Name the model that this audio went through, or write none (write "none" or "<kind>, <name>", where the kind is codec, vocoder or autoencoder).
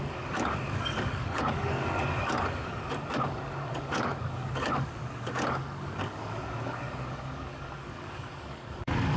codec, DAC